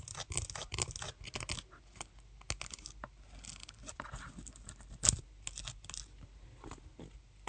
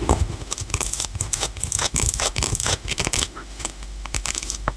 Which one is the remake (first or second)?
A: second